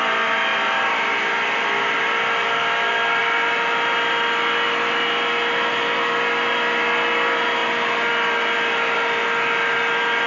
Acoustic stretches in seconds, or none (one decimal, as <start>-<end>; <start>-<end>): 0.0-10.3